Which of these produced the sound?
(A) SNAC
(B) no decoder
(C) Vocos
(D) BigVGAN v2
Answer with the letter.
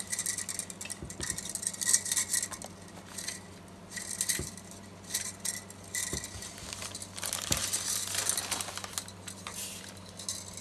B